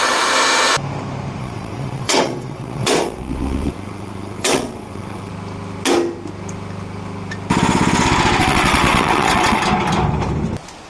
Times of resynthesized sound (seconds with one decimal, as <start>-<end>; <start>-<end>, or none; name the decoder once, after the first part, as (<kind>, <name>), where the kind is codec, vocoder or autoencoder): 1.4-5.3 (vocoder, WaveNeXt); 8.4-9.6